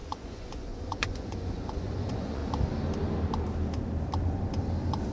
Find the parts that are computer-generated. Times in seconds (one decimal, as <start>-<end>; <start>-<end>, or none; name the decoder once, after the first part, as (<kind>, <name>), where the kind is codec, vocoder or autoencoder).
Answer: 0.0-2.4 (vocoder, Vocos)